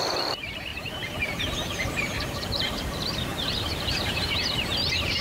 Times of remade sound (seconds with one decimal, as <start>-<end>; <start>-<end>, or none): 0.0-5.2